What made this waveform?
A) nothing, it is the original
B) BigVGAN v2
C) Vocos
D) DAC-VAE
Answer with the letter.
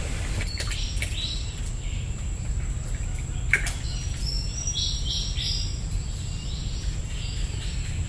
B